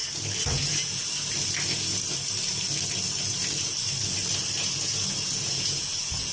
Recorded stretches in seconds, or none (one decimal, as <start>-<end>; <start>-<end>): 0.0-0.5; 1.0-4.6